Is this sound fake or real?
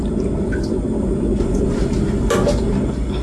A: real